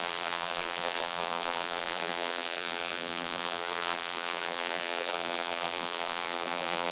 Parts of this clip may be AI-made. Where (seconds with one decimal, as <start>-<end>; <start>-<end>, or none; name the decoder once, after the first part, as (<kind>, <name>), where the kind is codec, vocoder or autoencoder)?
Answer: 0.0-6.9 (vocoder, BigVGAN v2)